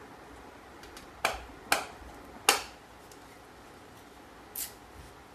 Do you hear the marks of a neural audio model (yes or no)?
no